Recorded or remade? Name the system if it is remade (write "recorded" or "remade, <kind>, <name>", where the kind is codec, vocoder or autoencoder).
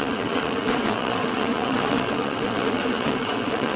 remade, vocoder, WaveNeXt